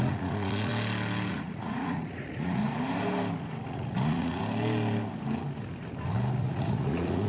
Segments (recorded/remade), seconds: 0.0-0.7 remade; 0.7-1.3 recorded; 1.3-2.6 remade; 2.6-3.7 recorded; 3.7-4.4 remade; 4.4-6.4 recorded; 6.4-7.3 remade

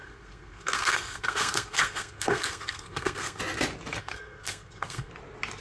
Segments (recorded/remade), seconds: 0.0-3.4 remade; 3.4-4.0 recorded; 4.0-5.1 remade; 5.1-5.6 recorded

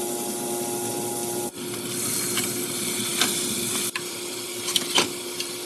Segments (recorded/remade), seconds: 0.0-3.1 recorded; 3.1-5.7 remade

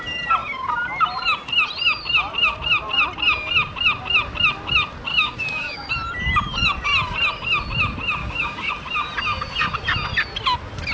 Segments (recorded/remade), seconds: 0.0-5.1 recorded; 5.1-5.9 remade; 5.9-8.2 recorded; 8.2-8.7 remade; 8.7-10.9 recorded